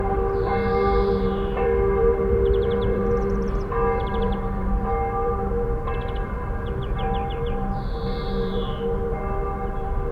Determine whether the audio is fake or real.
fake